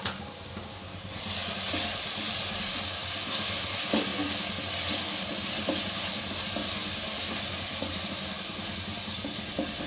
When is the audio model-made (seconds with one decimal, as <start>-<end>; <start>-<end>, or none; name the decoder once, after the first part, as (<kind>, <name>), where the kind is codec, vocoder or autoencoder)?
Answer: none